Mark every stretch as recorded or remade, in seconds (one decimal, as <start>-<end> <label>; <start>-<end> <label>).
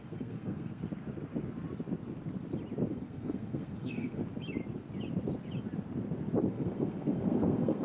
0.0-0.8 remade; 0.8-2.9 recorded; 2.9-4.2 remade; 4.2-6.5 recorded; 6.5-7.8 remade